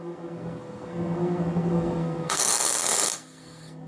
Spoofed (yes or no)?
yes